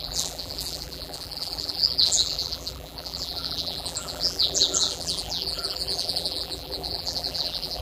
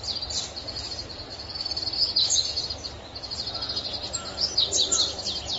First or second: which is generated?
first